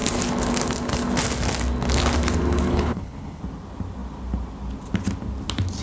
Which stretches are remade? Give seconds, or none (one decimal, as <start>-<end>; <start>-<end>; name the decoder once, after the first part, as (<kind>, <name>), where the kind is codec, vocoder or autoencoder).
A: 2.7-3.4 (codec, HILCodec)